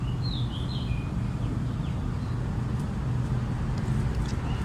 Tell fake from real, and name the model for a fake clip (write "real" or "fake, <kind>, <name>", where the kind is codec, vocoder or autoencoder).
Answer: real